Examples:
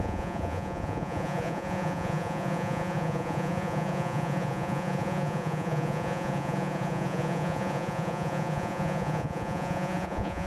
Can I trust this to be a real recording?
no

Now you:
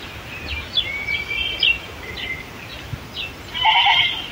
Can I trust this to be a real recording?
yes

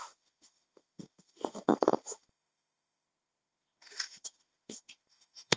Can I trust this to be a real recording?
no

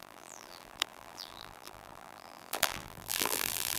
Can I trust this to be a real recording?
no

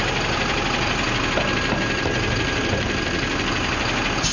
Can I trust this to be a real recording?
yes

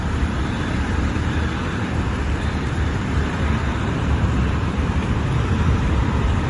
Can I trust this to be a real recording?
no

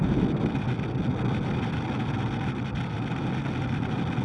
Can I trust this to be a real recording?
yes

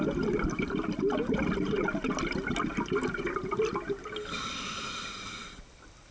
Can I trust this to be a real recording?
yes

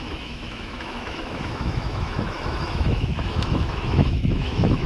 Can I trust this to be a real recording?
no